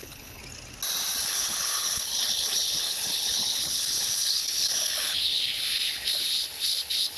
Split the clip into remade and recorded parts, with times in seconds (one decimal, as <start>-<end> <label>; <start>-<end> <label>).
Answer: 0.0-0.4 remade; 0.4-1.2 recorded; 1.2-7.2 remade